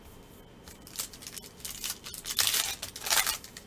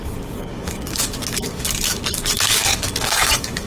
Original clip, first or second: first